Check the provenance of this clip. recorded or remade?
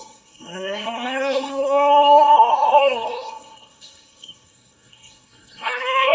remade